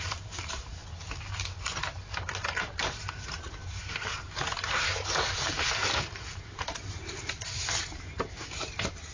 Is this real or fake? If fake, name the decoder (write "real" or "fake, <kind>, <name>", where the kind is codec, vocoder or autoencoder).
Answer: fake, vocoder, BigVGAN v2